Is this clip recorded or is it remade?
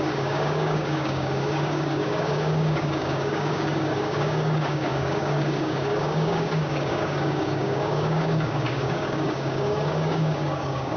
remade